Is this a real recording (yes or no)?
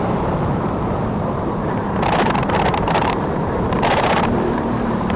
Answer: no